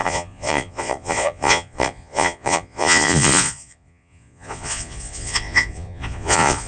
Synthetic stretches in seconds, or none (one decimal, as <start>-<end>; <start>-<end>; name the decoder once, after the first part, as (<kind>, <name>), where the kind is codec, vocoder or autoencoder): 0.0-6.7 (vocoder, Vocos)